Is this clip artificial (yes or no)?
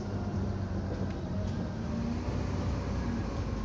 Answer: no